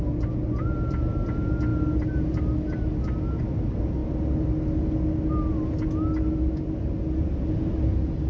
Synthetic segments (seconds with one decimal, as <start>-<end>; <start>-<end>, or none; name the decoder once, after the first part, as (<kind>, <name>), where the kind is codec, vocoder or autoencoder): none